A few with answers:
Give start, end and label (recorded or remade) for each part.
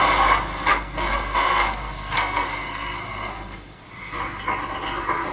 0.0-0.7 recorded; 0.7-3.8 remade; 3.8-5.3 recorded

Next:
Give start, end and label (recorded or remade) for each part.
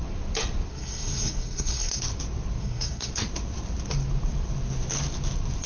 0.0-0.7 recorded; 0.7-2.0 remade; 2.0-2.6 recorded; 2.6-3.1 remade; 3.1-5.7 recorded